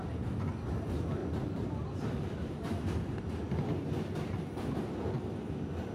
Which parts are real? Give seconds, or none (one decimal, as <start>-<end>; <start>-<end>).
0.0-1.2; 4.7-5.9